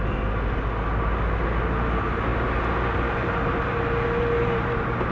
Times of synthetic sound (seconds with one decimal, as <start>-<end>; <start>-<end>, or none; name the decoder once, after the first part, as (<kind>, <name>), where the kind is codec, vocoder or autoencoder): none